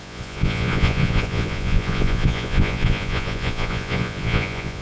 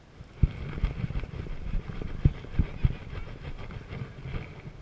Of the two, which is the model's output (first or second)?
first